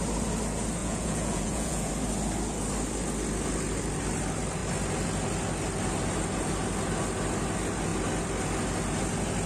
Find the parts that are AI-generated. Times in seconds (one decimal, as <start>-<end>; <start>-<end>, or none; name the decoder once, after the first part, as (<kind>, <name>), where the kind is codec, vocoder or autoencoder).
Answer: 0.8-1.9 (vocoder, Vocos)